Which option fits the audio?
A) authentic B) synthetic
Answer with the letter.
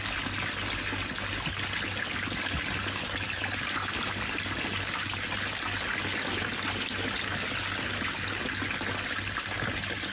A